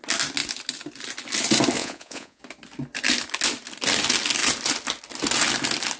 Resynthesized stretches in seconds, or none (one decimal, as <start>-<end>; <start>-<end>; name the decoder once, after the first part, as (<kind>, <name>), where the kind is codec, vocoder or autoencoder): 1.8-2.4 (vocoder, Vocos)